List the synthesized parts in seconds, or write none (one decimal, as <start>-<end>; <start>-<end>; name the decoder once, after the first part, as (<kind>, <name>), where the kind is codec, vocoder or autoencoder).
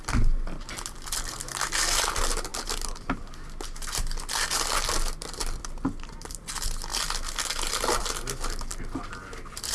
none